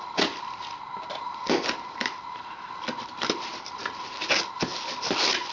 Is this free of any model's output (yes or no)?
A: no